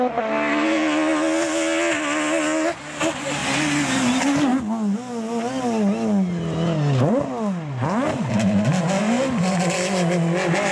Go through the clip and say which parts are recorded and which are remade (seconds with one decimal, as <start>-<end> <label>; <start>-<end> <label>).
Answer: 0.0-10.7 recorded